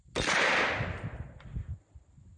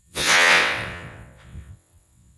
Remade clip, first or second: second